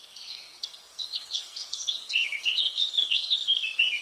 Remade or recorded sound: remade